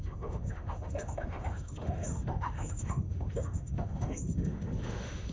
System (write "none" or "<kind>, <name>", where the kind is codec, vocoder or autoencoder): autoencoder, DAC-VAE